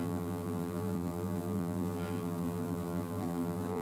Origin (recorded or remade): remade